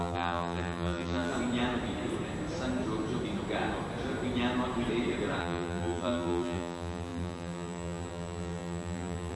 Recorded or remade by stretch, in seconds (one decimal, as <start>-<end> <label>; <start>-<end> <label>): 0.0-1.3 remade; 1.3-5.4 recorded; 5.4-9.3 remade